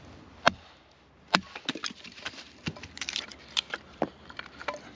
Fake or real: real